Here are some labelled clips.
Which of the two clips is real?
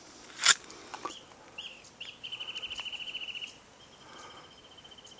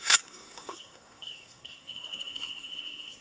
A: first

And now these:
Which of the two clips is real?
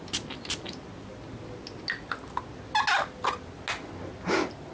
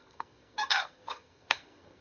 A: first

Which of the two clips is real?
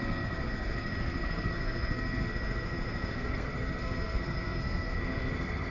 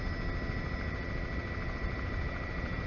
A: second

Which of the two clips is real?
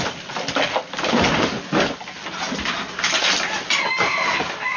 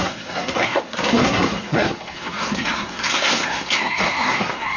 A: first